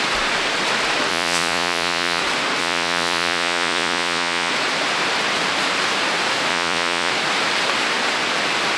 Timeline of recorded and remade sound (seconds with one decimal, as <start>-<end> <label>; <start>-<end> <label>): 0.0-1.1 recorded; 1.1-2.2 remade; 2.2-2.6 recorded; 2.6-4.5 remade; 4.5-6.5 recorded; 6.5-7.1 remade; 7.1-8.8 recorded